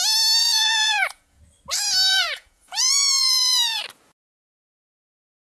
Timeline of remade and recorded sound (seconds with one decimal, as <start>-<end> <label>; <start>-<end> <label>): 0.0-0.4 recorded; 0.4-1.4 remade; 1.4-2.1 recorded; 2.1-3.8 remade; 3.8-5.5 recorded

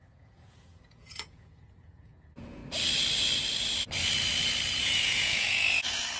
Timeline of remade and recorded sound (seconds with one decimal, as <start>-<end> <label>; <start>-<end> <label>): 0.0-2.6 remade; 2.6-4.8 recorded; 4.8-6.2 remade

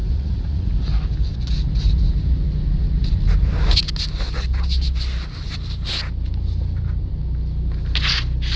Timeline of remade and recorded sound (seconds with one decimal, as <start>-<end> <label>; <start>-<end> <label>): 0.0-0.7 remade; 0.7-8.6 recorded

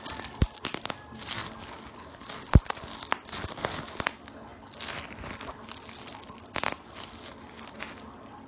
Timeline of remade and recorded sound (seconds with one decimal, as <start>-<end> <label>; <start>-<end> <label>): 0.0-8.5 recorded

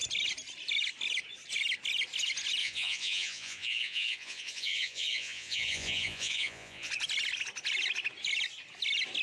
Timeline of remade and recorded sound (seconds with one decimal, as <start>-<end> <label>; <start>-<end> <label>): 0.0-2.6 recorded; 2.6-6.9 remade; 6.9-9.2 recorded

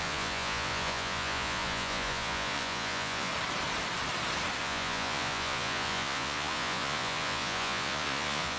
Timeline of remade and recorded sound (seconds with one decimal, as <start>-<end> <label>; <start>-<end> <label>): 0.0-3.3 remade; 3.3-4.6 recorded; 4.6-8.6 remade

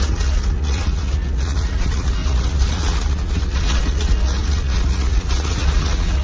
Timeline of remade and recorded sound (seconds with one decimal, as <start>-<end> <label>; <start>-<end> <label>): 0.0-6.2 remade

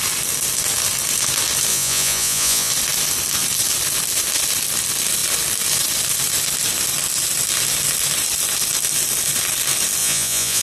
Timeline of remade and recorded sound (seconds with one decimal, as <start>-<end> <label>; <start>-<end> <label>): 0.0-1.7 recorded; 1.7-2.7 remade; 2.7-10.0 recorded; 10.0-10.6 remade